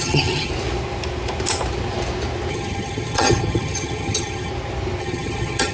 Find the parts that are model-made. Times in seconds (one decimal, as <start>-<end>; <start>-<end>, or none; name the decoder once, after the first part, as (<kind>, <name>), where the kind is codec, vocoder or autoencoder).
0.0-0.5 (vocoder, HiFi-GAN); 2.5-4.5; 5.0-5.7